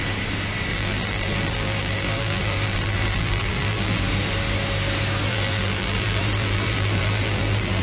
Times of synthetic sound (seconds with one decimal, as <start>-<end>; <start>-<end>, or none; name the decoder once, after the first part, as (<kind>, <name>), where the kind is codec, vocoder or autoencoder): 0.7-4.0 (vocoder, BigVGAN v2); 5.3-7.8